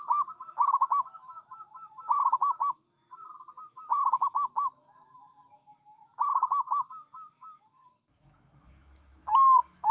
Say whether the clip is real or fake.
fake